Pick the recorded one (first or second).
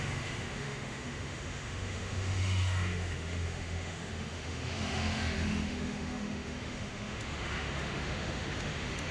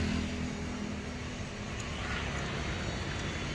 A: second